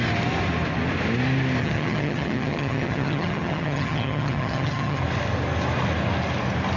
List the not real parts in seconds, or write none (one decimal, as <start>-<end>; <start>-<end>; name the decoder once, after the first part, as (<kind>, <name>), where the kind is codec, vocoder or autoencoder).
1.6-5.0 (vocoder, HiFi-GAN)